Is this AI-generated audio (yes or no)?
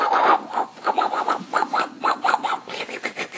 yes